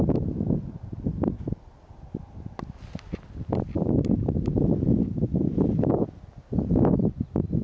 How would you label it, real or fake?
real